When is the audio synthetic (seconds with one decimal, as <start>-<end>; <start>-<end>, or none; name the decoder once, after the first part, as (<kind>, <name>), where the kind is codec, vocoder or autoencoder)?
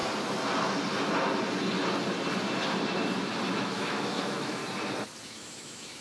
3.6-4.6 (autoencoder, DAC-VAE); 5.2-6.0